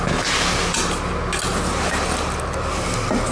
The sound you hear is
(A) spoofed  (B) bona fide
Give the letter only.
B